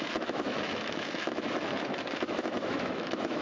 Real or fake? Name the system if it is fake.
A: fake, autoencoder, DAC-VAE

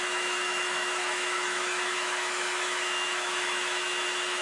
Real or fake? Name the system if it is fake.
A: fake, autoencoder, DAC-VAE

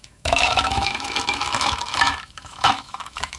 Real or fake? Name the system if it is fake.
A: fake, autoencoder, DAC-VAE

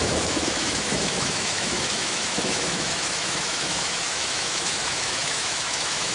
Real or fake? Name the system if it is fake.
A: fake, autoencoder, DAC-VAE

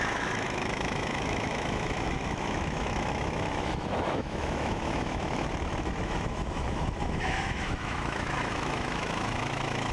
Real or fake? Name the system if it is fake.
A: fake, autoencoder, DAC-VAE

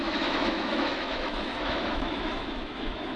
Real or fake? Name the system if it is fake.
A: fake, autoencoder, DAC-VAE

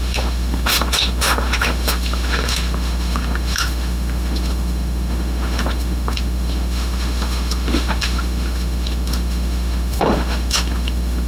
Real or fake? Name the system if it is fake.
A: fake, autoencoder, DAC-VAE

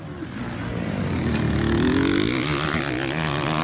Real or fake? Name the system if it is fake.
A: real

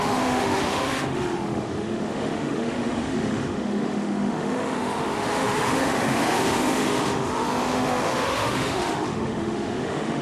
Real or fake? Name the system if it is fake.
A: fake, autoencoder, DAC-VAE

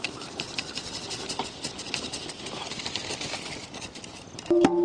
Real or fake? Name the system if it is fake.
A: real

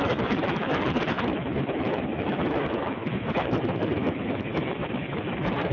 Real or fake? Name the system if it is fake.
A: fake, autoencoder, DAC-VAE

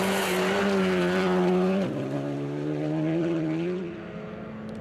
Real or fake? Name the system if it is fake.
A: real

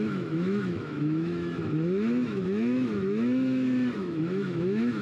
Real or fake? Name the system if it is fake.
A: fake, autoencoder, DAC-VAE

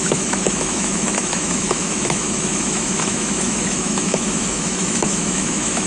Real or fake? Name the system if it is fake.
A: fake, autoencoder, DAC-VAE